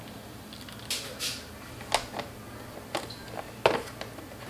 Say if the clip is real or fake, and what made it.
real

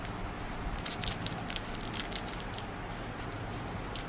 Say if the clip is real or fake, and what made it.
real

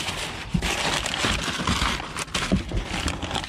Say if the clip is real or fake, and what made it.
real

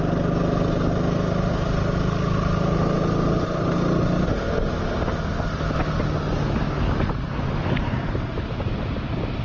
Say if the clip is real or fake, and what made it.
real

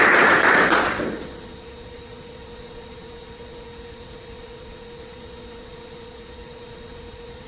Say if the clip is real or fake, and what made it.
fake, vocoder, Vocos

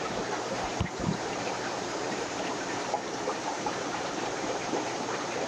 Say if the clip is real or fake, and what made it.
fake, vocoder, BigVGAN v2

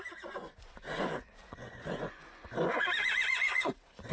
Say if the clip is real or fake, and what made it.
fake, vocoder, Vocos